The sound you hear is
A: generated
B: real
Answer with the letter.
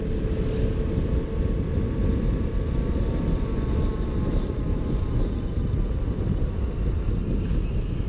B